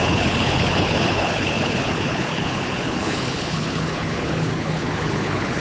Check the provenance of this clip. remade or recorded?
remade